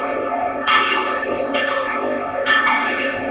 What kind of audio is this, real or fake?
fake